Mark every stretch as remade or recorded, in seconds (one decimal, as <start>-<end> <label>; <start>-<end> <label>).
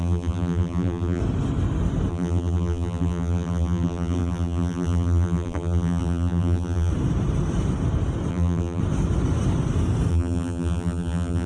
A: 0.0-1.2 remade; 1.2-2.1 recorded; 2.1-6.9 remade; 6.9-8.3 recorded; 8.3-8.8 remade; 8.8-10.1 recorded; 10.1-11.5 remade